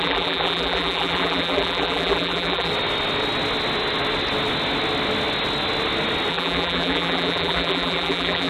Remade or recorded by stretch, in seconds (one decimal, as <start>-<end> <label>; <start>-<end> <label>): 0.0-2.7 remade; 2.7-6.3 recorded; 6.3-8.5 remade